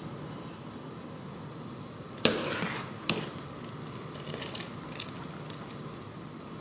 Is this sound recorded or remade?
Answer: recorded